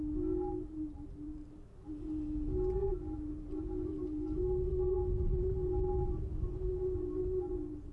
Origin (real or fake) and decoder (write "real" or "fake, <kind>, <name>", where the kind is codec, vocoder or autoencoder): real